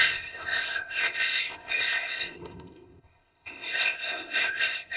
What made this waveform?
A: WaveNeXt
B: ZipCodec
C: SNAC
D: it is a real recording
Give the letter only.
B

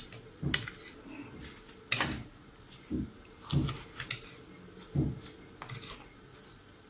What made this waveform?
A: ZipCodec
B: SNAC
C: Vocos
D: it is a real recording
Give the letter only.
D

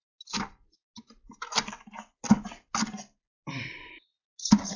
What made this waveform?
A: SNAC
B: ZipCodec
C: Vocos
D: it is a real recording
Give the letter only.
D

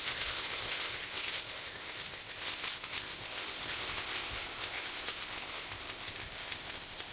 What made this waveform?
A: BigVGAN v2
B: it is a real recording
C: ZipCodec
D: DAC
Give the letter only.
C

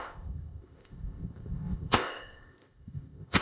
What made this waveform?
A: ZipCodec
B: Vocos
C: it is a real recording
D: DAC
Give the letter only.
A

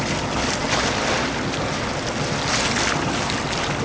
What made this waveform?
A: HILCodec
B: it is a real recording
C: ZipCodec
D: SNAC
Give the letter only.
B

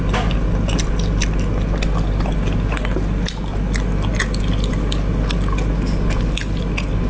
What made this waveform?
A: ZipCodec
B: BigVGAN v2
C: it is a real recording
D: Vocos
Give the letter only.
C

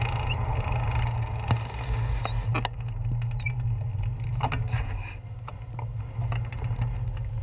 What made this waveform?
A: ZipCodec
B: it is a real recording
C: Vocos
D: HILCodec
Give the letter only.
B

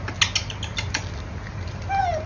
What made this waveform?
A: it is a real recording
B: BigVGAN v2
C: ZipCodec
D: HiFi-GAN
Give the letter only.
A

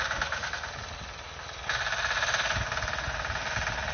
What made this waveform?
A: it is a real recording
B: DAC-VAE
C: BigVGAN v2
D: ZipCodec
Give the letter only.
A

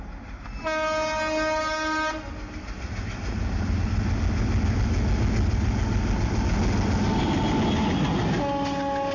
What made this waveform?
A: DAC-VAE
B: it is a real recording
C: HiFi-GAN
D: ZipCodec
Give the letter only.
B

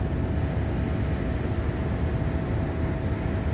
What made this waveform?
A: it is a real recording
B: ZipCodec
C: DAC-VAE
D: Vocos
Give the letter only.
A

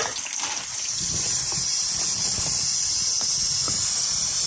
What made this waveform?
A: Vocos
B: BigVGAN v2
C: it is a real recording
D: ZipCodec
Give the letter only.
C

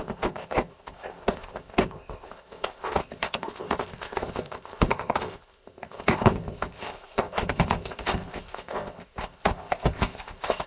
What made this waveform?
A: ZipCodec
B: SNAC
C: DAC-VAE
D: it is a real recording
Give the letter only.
A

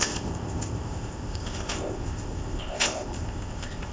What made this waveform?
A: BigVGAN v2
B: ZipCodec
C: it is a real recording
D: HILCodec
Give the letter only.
B